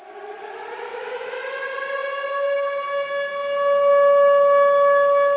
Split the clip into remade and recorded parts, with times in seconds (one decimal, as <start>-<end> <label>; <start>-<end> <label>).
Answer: 0.0-5.4 recorded